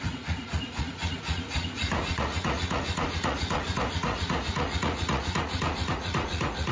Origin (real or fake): fake